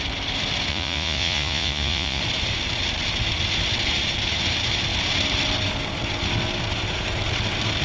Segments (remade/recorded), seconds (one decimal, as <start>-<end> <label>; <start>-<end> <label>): 0.0-0.7 recorded; 0.7-2.2 remade; 2.2-7.8 recorded